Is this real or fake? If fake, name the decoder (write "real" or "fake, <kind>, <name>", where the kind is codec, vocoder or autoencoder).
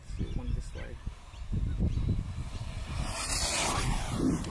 real